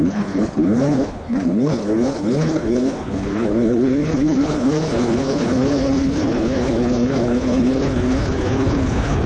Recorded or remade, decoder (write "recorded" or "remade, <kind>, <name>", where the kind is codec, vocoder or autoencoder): remade, codec, HILCodec